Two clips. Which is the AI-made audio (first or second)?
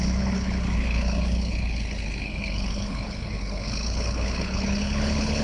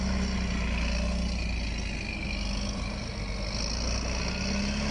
first